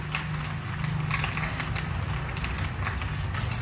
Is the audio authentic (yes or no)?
yes